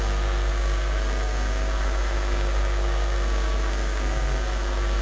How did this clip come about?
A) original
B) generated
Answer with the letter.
B